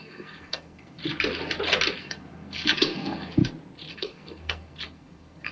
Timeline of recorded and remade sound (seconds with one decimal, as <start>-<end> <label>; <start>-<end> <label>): 0.0-1.0 remade; 1.0-2.0 recorded; 2.0-3.4 remade; 3.4-3.9 recorded; 3.9-5.5 remade